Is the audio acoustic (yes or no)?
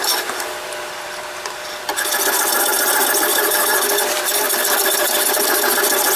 no